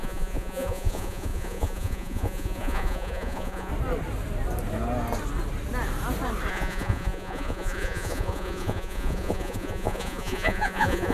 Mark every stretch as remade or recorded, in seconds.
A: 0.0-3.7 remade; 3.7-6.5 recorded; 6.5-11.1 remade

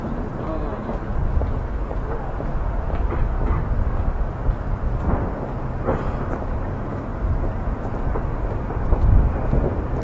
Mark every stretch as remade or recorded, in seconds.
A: 0.0-1.1 recorded; 1.1-2.0 remade; 2.0-3.9 recorded; 3.9-5.1 remade; 5.1-7.1 recorded; 7.1-9.4 remade; 9.4-10.0 recorded

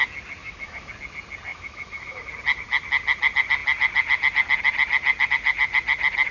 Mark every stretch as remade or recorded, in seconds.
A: 0.0-0.4 recorded; 0.4-0.9 remade; 0.9-1.5 recorded; 1.5-2.3 remade; 2.3-6.3 recorded

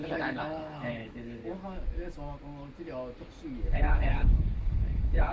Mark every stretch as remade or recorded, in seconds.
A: 0.0-1.4 remade; 1.4-3.6 recorded; 3.6-5.3 remade

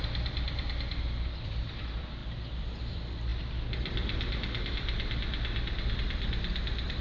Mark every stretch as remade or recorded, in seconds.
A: 0.0-3.3 remade; 3.3-5.9 recorded; 5.9-7.0 remade

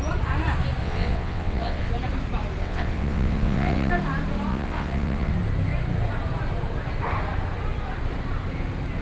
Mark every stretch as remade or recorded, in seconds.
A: 0.0-0.8 recorded; 0.8-1.9 remade; 1.9-2.6 recorded; 2.6-3.9 remade; 3.9-4.5 recorded; 4.5-5.3 remade; 5.3-9.0 recorded

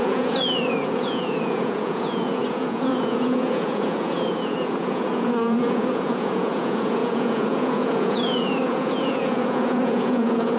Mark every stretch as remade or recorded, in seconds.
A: 0.0-10.6 remade